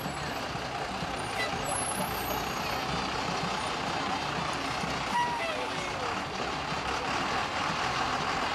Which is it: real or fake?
real